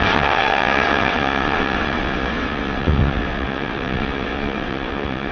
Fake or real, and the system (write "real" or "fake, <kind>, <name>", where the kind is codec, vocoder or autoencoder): fake, vocoder, WaveNeXt